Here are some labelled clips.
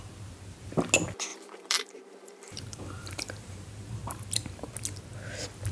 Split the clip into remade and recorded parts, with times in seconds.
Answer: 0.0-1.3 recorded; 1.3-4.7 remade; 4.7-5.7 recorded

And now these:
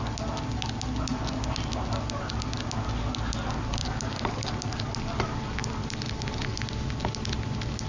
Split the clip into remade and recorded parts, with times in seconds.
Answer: 0.0-3.8 recorded; 3.8-5.0 remade; 5.0-5.6 recorded; 5.6-6.2 remade; 6.2-7.9 recorded

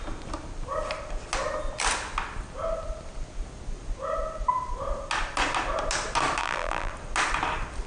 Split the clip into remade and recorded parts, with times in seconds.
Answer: 0.0-6.4 recorded; 6.4-6.9 remade; 6.9-7.9 recorded

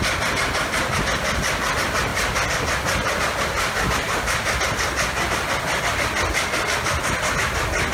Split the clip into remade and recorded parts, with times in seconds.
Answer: 0.0-7.9 recorded

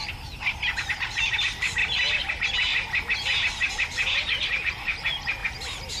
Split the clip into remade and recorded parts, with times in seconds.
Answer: 0.0-1.8 remade; 1.8-2.3 recorded; 2.3-2.7 remade; 2.7-4.2 recorded; 4.2-5.4 remade; 5.4-6.0 recorded

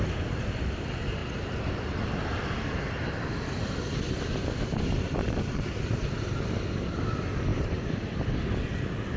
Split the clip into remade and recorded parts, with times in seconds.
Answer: 0.0-7.5 recorded; 7.5-8.3 remade; 8.3-9.2 recorded